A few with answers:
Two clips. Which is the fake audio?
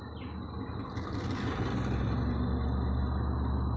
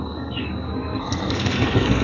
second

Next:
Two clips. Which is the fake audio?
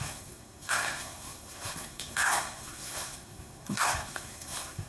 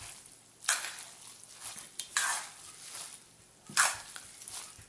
first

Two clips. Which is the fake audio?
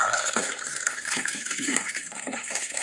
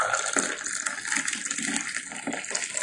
first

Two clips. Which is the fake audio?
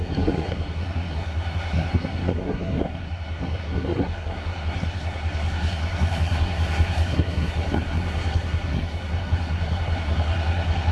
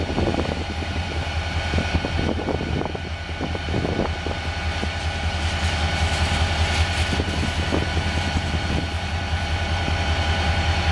first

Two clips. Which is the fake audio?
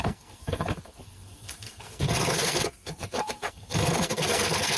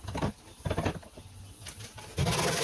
first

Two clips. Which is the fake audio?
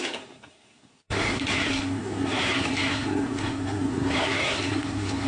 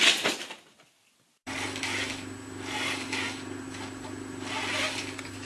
first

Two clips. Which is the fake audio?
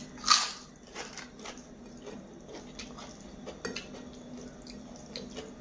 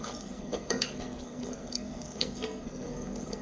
second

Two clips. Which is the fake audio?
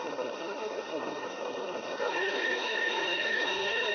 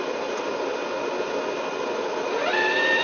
first